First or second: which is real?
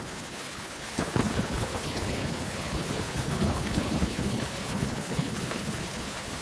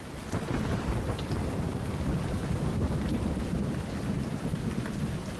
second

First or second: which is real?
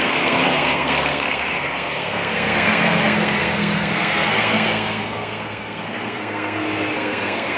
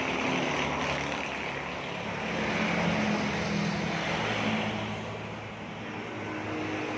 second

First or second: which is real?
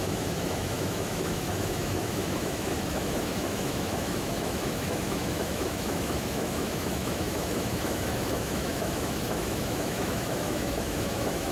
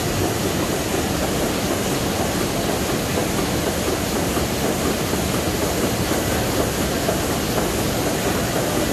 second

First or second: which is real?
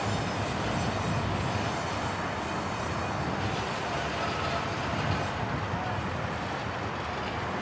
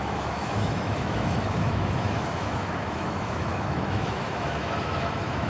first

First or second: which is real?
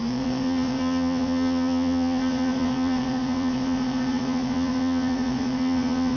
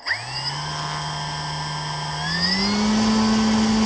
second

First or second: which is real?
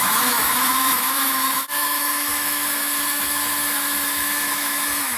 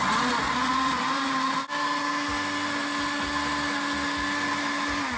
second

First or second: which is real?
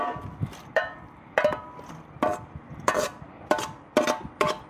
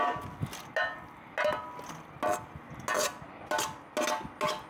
second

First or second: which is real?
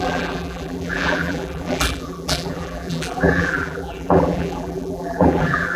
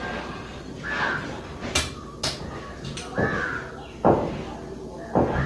second